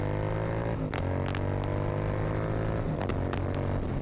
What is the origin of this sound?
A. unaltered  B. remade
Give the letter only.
A